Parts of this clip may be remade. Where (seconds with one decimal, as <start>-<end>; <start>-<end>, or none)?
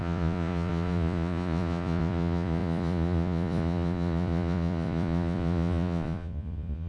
0.0-6.9